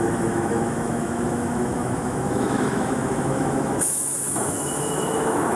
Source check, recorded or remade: remade